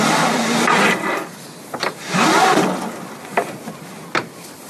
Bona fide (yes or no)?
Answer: yes